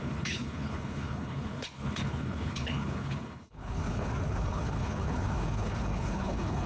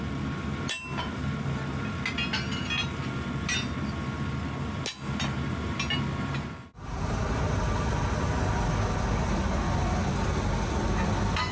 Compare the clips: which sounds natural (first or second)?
second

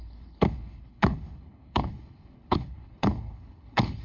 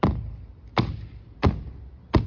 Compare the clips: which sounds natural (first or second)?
second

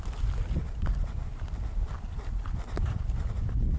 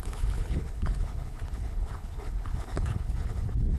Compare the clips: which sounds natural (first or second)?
first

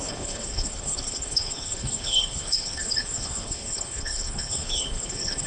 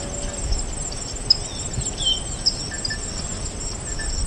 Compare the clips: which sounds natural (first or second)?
second